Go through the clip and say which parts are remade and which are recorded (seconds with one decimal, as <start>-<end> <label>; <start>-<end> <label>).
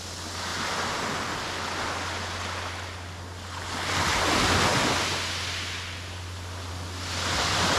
0.0-7.8 recorded